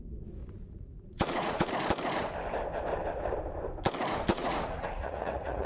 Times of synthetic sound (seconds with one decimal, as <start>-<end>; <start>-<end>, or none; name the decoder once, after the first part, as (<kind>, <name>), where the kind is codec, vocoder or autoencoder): 0.4-1.7 (vocoder, Vocos); 4.3-5.7